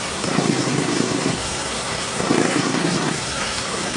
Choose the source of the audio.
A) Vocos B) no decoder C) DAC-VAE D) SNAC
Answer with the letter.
D